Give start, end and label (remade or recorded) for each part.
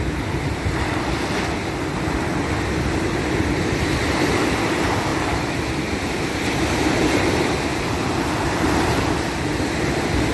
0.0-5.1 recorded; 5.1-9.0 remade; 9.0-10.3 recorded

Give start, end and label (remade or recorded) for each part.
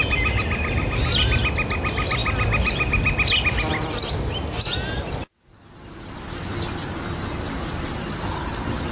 0.0-8.9 recorded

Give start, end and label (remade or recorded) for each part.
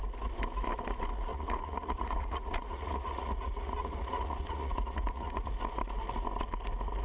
0.0-1.3 recorded; 1.3-5.5 remade; 5.5-7.0 recorded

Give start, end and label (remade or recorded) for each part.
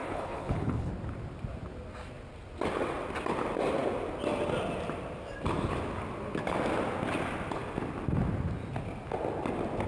0.0-0.9 remade; 0.9-9.9 recorded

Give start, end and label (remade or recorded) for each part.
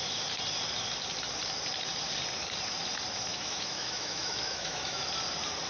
0.0-3.3 recorded; 3.3-5.1 remade; 5.1-5.7 recorded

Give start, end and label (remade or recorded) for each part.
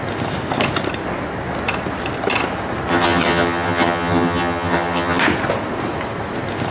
0.0-2.9 recorded; 2.9-5.2 remade; 5.2-6.7 recorded